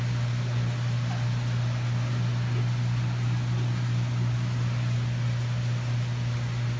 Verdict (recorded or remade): recorded